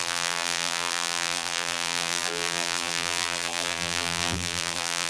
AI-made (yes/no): yes